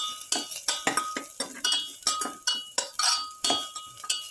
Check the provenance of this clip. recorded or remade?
recorded